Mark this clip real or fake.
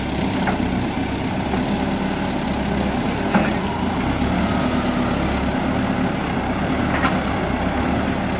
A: real